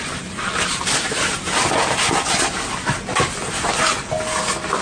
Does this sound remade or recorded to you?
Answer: recorded